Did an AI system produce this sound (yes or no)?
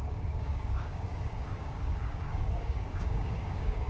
yes